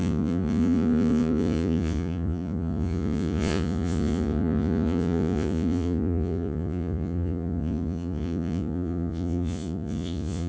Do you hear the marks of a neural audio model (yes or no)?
yes